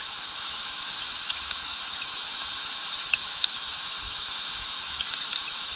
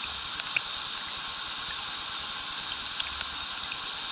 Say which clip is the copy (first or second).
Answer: first